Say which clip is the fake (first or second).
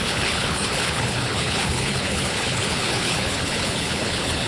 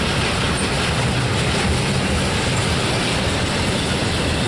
first